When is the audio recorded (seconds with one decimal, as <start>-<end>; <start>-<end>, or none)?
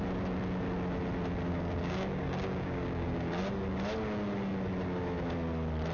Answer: 0.0-1.5; 3.4-5.9